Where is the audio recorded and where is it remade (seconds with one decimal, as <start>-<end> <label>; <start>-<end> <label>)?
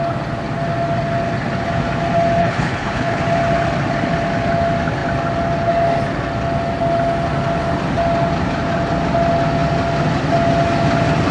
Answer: 0.0-2.4 recorded; 2.4-3.2 remade; 3.2-11.3 recorded